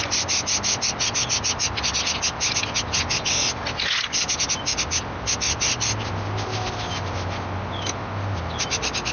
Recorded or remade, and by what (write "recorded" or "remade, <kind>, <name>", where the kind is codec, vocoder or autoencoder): recorded